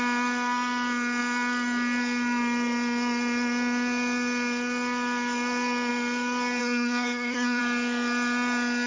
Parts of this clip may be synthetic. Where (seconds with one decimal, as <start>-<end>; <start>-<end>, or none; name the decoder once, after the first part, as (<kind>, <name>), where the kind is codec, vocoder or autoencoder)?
6.6-7.6 (codec, SNAC)